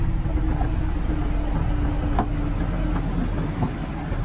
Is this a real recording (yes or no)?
yes